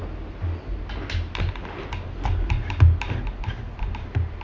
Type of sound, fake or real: real